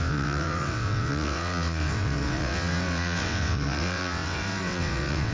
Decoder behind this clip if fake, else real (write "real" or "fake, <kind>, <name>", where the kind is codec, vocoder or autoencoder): fake, vocoder, WaveNeXt